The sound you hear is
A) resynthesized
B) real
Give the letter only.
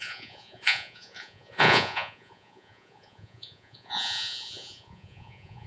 A